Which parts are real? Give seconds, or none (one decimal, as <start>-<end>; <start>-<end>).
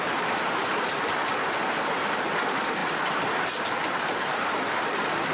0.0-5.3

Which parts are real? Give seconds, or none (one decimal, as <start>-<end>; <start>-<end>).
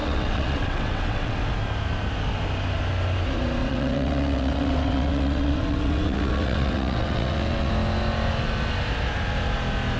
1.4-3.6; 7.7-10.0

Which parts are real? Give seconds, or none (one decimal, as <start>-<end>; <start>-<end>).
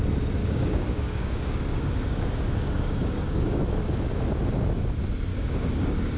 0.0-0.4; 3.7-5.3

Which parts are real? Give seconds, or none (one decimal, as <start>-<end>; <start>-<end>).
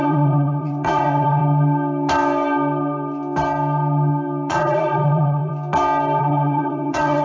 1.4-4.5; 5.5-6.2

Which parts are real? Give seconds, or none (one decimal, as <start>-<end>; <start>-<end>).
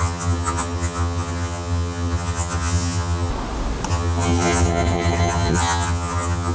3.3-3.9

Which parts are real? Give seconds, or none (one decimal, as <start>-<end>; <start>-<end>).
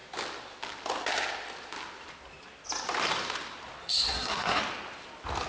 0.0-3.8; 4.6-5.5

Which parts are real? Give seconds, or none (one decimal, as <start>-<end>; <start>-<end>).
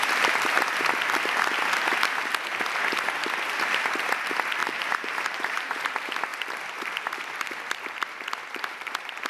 0.0-4.6; 5.8-9.3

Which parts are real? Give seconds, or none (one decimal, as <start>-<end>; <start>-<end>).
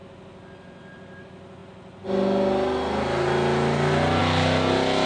0.0-5.1